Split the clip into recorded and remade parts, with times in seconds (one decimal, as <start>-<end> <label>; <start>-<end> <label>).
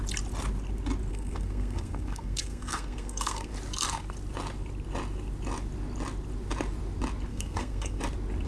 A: 0.0-1.1 recorded; 1.1-3.5 remade; 3.5-7.3 recorded; 7.3-8.0 remade; 8.0-8.5 recorded